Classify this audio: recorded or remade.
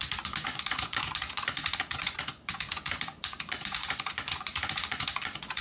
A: remade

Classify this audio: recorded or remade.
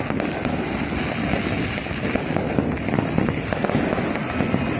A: recorded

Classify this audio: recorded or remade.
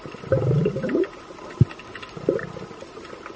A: recorded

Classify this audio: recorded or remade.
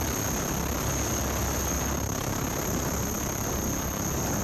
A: recorded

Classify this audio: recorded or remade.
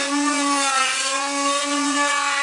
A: remade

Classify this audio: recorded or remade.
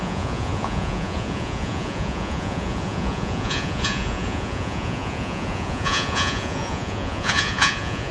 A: remade